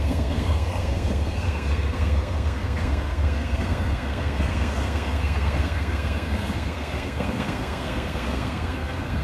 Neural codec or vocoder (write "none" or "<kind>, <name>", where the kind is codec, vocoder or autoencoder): codec, SNAC